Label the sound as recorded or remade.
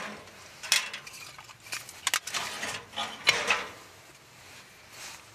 recorded